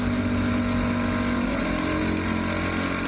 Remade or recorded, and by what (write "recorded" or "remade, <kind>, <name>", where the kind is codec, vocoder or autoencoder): recorded